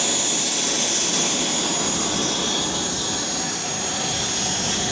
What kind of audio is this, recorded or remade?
recorded